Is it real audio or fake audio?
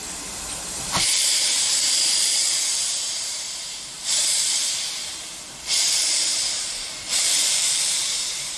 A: fake